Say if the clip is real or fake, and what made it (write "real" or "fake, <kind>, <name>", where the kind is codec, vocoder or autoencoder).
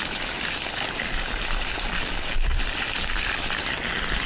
real